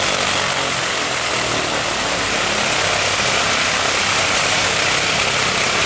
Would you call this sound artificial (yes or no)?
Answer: no